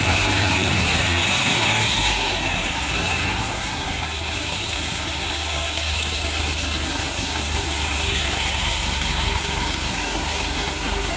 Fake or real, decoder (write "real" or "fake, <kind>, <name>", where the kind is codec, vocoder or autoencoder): fake, codec, SNAC